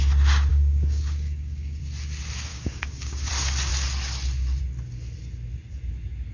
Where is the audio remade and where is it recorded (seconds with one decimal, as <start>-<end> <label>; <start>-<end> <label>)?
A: 0.0-0.5 recorded; 0.5-1.8 remade; 1.8-2.5 recorded; 2.5-3.3 remade; 3.3-6.3 recorded

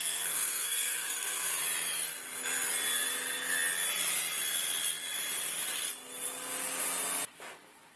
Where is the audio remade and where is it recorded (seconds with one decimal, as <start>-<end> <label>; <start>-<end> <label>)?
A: 0.0-1.5 remade; 1.5-8.0 recorded

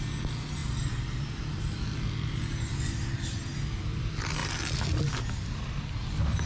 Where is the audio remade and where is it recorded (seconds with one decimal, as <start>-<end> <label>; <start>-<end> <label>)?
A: 0.0-6.5 recorded

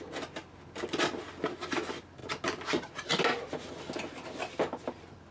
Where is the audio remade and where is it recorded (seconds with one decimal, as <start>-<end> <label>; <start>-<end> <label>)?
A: 0.0-5.3 recorded

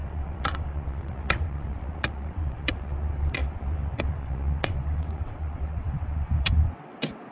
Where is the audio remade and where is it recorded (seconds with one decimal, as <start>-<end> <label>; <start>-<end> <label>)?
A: 0.0-7.3 remade

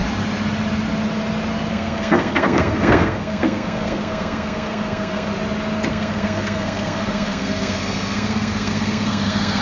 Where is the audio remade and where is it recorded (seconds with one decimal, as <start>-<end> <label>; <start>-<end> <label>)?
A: 0.0-1.7 recorded; 1.7-5.3 remade; 5.3-5.9 recorded; 5.9-9.6 remade

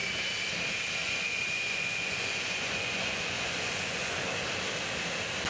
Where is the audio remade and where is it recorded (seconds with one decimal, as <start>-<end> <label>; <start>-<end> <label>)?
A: 0.0-1.0 recorded; 1.0-4.3 remade; 4.3-5.5 recorded